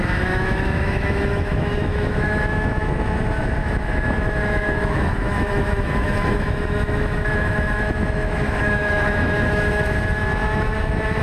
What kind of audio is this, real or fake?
fake